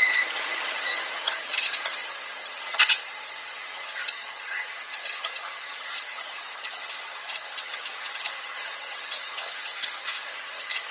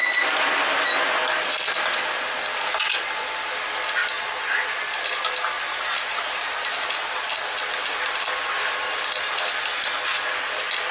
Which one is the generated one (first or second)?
first